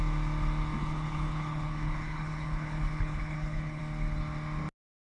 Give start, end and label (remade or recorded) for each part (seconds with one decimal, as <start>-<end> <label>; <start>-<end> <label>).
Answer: 0.0-0.8 recorded; 0.8-3.8 remade; 3.8-5.0 recorded